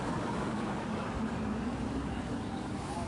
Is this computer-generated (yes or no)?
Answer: yes